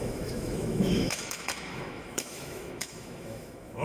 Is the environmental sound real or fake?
fake